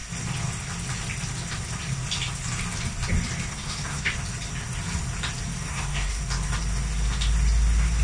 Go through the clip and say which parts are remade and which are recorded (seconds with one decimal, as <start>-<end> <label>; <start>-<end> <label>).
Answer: 0.0-3.5 recorded; 3.5-4.1 remade; 4.1-5.7 recorded; 5.7-6.2 remade; 6.2-8.0 recorded